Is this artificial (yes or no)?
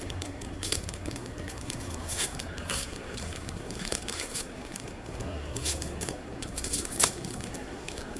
yes